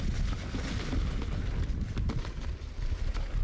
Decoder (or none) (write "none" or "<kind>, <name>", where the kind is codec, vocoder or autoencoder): none